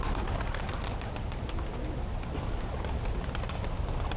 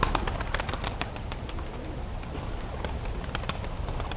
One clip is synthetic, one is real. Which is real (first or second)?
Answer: first